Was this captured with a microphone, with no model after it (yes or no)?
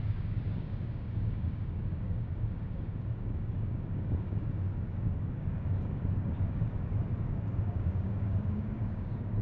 no